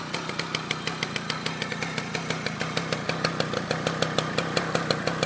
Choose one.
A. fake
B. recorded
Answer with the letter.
B